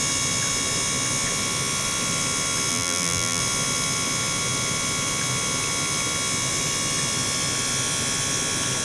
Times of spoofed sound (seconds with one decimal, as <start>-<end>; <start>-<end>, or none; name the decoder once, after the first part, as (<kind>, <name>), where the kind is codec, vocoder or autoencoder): 2.7-3.4 (vocoder, BigVGAN v2)